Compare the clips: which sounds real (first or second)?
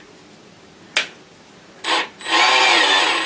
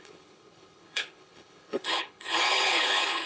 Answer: first